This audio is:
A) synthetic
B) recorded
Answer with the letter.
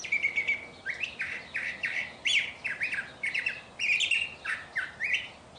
B